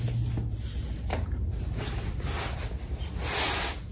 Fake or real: real